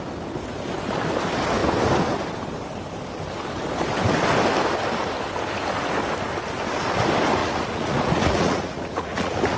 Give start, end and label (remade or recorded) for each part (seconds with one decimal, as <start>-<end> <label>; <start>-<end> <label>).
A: 0.0-7.4 recorded; 7.4-9.6 remade